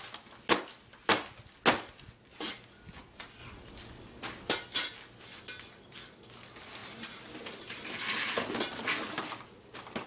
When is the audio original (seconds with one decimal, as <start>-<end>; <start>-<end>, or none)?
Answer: 0.0-10.1